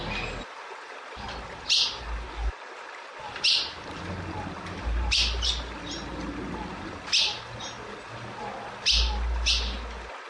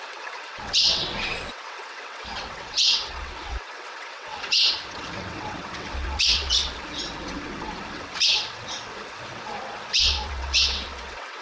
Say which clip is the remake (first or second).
second